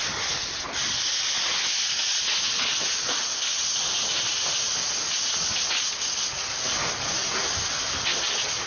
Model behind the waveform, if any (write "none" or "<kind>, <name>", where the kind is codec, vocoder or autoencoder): none